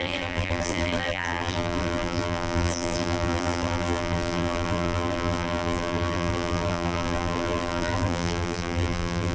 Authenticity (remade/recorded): remade